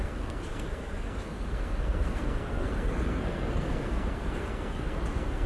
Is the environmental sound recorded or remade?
remade